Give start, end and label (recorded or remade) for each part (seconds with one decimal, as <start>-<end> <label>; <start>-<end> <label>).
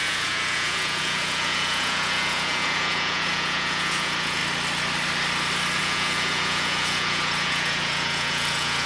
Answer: 0.0-4.4 remade; 4.4-5.8 recorded; 5.8-8.9 remade